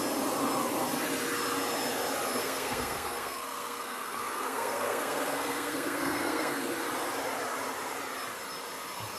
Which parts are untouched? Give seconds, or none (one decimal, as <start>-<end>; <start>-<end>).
0.0-2.4; 6.7-9.2